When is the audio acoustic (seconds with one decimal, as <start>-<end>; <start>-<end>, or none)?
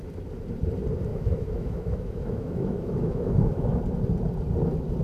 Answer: 0.0-1.1; 3.8-5.0